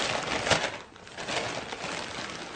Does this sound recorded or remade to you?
recorded